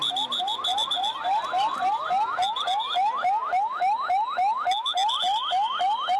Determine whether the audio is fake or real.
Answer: real